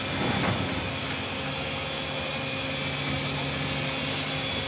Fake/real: real